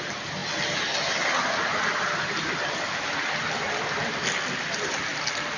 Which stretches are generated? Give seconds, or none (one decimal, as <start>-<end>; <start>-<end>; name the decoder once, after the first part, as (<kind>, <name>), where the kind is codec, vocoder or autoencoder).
none